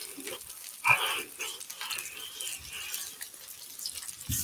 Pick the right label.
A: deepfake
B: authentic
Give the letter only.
B